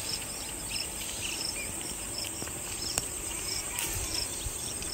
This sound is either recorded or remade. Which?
remade